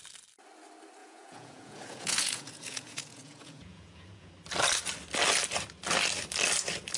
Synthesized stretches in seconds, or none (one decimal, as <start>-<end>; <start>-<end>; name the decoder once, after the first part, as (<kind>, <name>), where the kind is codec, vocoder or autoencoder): 1.0-4.3 (vocoder, Vocos)